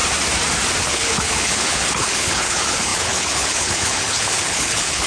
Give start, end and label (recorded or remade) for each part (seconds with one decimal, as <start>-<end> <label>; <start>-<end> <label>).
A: 0.0-0.8 recorded; 0.8-5.1 remade